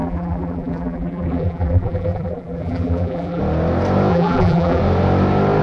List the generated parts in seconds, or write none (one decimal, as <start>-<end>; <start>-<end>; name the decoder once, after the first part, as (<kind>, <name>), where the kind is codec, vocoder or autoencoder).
0.0-3.4 (vocoder, BigVGAN v2); 4.1-4.8